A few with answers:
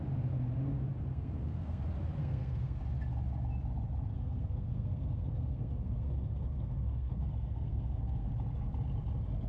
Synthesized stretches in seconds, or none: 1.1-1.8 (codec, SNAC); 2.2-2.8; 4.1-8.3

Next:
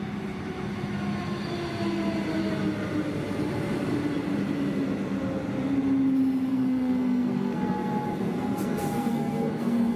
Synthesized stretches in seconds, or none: 6.5-10.0 (codec, SNAC)

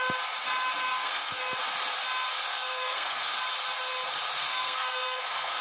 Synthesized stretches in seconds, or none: 0.9-1.4 (codec, SNAC); 2.5-3.4; 4.4-5.6